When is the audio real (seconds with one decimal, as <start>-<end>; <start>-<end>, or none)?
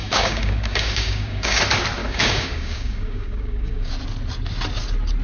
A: 1.6-2.0; 3.9-5.2